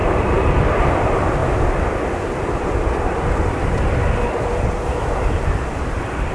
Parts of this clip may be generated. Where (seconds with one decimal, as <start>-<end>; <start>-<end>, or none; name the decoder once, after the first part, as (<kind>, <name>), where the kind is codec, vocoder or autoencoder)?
0.0-1.4 (vocoder, BigVGAN v2); 4.3-6.3